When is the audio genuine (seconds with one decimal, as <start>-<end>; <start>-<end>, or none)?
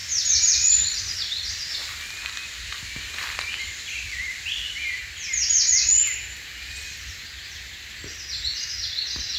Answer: 5.0-9.4